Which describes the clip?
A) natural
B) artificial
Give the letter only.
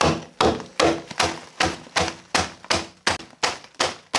A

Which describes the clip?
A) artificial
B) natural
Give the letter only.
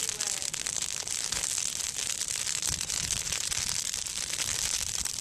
B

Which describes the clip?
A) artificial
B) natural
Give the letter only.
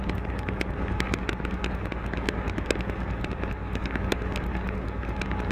A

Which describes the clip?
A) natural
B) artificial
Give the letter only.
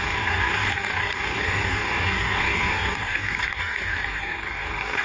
B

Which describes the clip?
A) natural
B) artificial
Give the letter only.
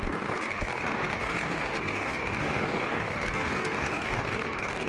B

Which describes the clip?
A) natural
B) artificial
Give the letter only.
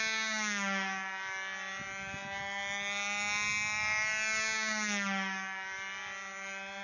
A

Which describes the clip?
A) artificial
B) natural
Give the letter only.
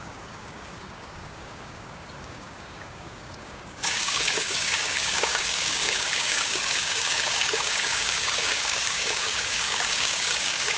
A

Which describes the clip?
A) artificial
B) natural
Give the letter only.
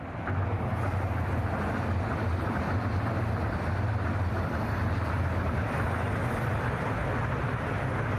B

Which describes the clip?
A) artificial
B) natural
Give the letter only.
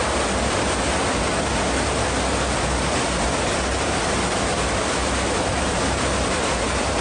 B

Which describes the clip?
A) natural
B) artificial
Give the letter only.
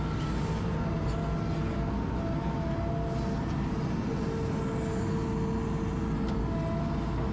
A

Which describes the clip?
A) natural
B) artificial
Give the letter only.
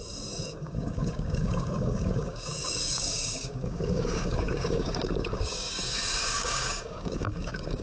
B